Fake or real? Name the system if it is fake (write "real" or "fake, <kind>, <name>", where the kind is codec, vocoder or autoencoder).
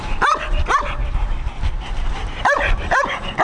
fake, vocoder, BigVGAN v2